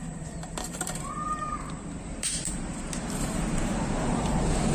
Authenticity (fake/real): fake